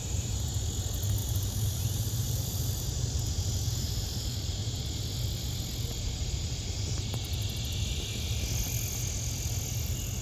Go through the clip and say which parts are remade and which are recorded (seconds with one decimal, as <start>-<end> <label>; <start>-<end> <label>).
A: 0.0-0.5 remade; 0.5-1.2 recorded; 1.2-4.8 remade; 4.8-10.2 recorded